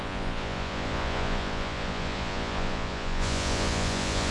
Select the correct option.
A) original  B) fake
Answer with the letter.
B